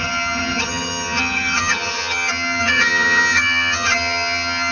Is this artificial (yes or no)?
yes